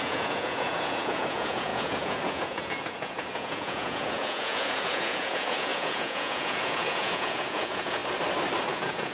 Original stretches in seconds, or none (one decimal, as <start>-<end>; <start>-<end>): 8.0-8.7